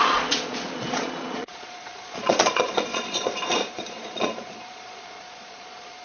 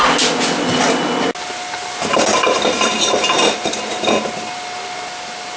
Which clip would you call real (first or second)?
second